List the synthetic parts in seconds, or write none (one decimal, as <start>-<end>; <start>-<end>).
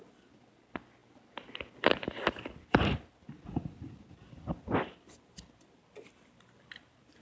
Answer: none